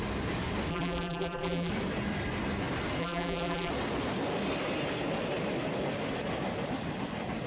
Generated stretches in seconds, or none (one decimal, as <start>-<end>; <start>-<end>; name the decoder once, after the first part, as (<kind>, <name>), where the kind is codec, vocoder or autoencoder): 0.7-1.7 (vocoder, BigVGAN v2); 3.0-3.7